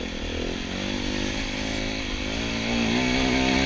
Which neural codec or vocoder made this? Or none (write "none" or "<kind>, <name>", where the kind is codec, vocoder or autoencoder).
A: none